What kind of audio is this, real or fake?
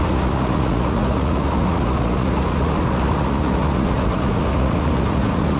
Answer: fake